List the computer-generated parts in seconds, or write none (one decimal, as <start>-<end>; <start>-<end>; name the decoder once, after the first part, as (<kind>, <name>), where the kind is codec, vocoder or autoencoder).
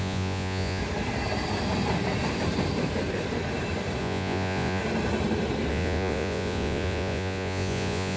0.0-0.8 (vocoder, Vocos); 4.0-4.8; 5.7-8.2